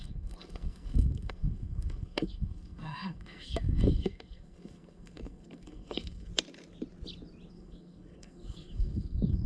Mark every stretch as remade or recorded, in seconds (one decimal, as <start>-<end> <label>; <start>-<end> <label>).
0.0-6.3 remade; 6.3-7.5 recorded; 7.5-9.5 remade

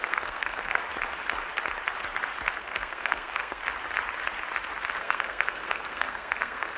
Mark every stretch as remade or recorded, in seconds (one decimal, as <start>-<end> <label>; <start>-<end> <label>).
0.0-0.8 remade; 0.8-2.6 recorded; 2.6-3.6 remade; 3.6-5.0 recorded; 5.0-6.8 remade

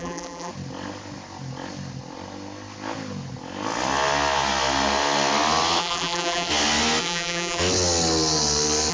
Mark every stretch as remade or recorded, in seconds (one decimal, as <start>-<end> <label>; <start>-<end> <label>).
0.0-0.5 remade; 0.5-5.8 recorded; 5.8-6.5 remade; 6.5-7.0 recorded; 7.0-7.6 remade; 7.6-8.9 recorded

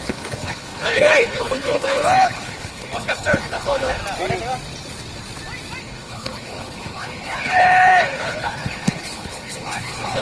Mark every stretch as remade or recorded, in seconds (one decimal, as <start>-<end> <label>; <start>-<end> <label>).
0.0-4.0 remade; 4.0-5.8 recorded; 5.8-10.2 remade